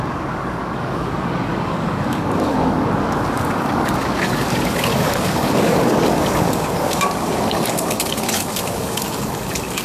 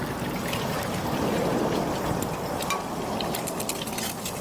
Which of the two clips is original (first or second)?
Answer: second